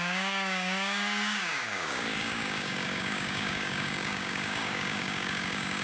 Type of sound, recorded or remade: remade